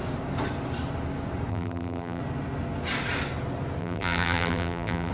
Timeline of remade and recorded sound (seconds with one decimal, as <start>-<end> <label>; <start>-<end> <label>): 0.0-1.5 recorded; 1.5-2.2 remade; 2.2-3.8 recorded; 3.8-5.1 remade